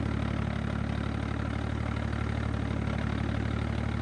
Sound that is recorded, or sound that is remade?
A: recorded